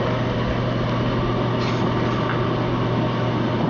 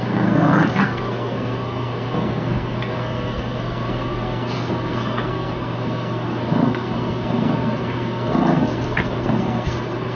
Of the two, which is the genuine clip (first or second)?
first